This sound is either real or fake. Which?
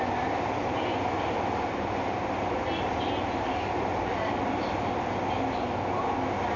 real